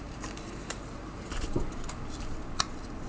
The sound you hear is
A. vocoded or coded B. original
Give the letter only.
B